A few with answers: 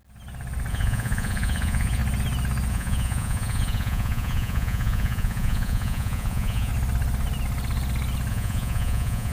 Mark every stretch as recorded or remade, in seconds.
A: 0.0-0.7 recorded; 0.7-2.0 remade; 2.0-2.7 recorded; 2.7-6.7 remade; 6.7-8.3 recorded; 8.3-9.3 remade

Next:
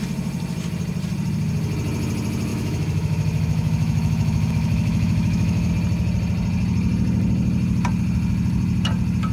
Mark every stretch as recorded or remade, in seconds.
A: 0.0-2.5 recorded; 2.5-5.7 remade; 5.7-9.3 recorded

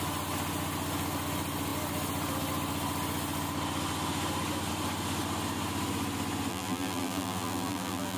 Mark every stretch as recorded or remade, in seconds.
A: 0.0-6.5 recorded; 6.5-8.2 remade

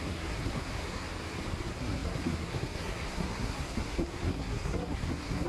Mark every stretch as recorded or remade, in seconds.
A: 0.0-1.1 remade; 1.1-1.6 recorded; 1.6-5.5 remade

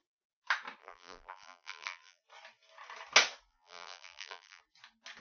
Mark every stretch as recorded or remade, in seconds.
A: 0.0-0.8 recorded; 0.8-2.2 remade; 2.2-3.5 recorded; 3.5-4.6 remade; 4.6-5.2 recorded

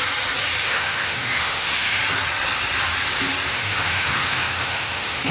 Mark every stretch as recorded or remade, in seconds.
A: 0.0-0.6 recorded; 0.6-2.0 remade; 2.0-3.5 recorded; 3.5-5.3 remade

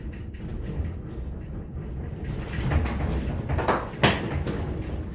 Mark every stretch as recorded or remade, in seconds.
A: 0.0-5.1 recorded